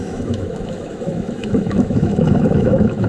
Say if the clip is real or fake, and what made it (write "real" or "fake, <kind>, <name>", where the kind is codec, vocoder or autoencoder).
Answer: fake, autoencoder, DAC-VAE